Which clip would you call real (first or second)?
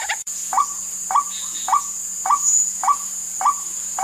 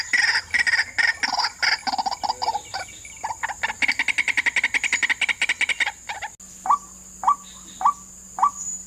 second